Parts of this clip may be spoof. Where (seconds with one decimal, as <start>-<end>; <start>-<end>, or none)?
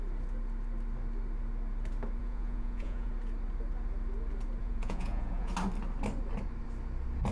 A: 2.2-3.1; 4.6-5.5